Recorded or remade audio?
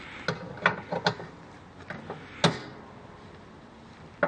recorded